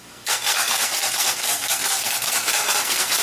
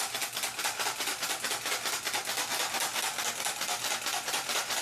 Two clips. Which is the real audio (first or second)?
second